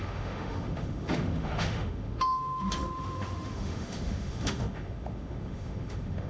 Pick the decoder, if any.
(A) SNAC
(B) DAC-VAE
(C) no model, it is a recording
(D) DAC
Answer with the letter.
B